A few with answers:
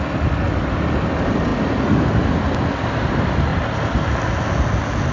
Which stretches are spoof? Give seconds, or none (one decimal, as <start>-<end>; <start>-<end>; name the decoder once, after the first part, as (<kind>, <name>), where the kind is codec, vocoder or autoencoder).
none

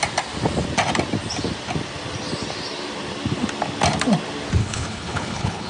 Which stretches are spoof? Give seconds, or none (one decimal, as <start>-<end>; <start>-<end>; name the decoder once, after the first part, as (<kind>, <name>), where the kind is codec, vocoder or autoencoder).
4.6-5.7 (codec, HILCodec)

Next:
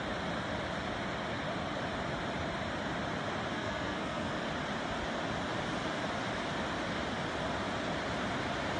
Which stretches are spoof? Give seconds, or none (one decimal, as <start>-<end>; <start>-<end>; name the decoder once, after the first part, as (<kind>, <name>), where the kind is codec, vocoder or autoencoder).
3.5-4.3 (codec, SNAC)

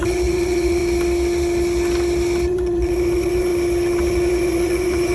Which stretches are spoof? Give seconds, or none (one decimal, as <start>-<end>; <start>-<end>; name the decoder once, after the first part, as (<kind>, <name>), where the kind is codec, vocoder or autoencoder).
0.0-0.8 (vocoder, Vocos); 2.5-3.5; 4.1-5.1